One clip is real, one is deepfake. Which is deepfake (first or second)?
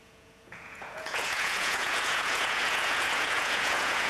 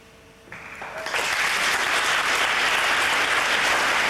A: first